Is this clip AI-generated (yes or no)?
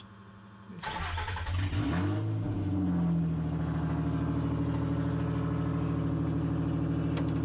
no